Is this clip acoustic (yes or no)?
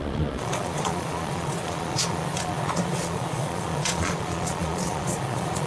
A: no